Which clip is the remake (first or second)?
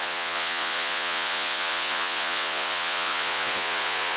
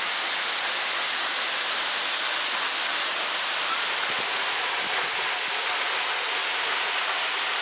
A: first